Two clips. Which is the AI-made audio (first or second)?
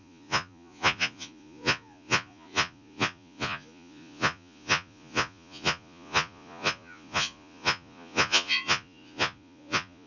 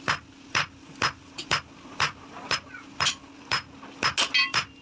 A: first